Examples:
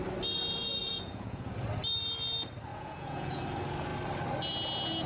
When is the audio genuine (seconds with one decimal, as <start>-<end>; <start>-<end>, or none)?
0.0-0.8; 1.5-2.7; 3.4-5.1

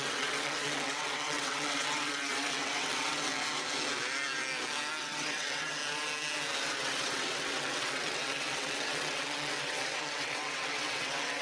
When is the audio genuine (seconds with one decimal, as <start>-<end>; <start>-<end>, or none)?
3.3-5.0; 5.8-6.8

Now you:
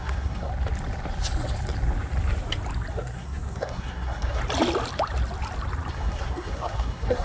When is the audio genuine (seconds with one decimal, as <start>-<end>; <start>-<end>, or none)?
0.5-2.9; 4.4-5.9

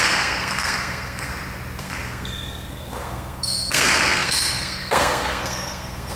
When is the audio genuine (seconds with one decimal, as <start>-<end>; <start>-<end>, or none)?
1.3-1.8

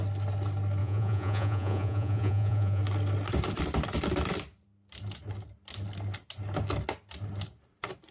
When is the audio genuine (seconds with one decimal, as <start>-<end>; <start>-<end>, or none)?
0.0-0.8; 2.8-8.1

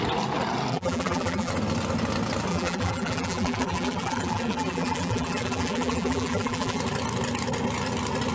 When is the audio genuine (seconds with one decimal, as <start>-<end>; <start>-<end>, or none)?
0.0-0.7; 1.5-2.5; 6.8-8.3

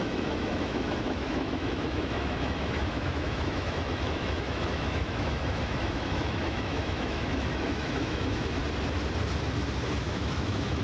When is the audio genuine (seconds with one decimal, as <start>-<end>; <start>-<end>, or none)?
8.6-9.9

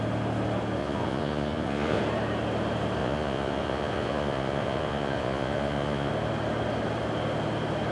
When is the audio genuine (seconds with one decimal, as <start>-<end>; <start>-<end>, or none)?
0.0-0.8; 2.0-3.0; 6.1-7.9